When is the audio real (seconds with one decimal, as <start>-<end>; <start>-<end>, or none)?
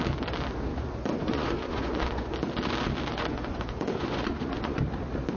0.0-0.7; 2.3-3.1; 4.8-5.4